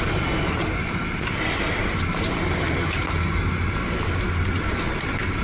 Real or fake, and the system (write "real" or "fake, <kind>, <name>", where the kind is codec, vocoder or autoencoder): real